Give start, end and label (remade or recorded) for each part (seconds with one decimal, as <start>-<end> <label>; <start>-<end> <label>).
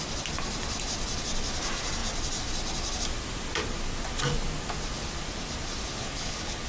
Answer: 0.0-6.0 recorded; 6.0-6.7 remade